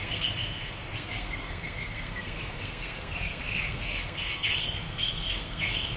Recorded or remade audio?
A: remade